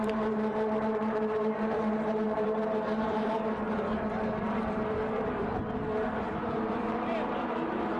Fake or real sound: fake